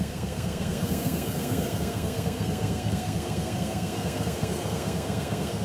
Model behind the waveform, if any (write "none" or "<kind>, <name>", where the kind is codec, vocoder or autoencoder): codec, SNAC